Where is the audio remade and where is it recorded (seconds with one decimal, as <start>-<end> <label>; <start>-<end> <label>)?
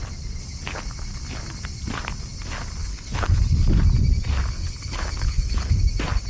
0.0-2.8 recorded; 2.8-3.4 remade; 3.4-4.6 recorded; 4.6-5.8 remade; 5.8-6.3 recorded